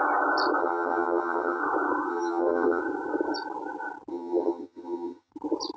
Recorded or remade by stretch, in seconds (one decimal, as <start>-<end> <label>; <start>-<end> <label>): 0.0-0.6 recorded; 0.6-1.6 remade; 1.6-2.1 recorded; 2.1-2.8 remade; 2.8-4.1 recorded; 4.1-5.3 remade; 5.3-5.8 recorded